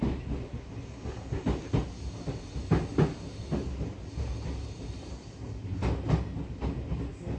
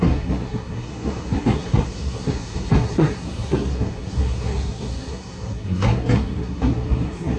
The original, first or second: first